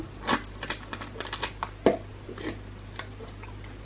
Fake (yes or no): no